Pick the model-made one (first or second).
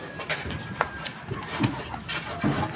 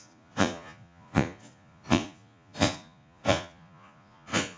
second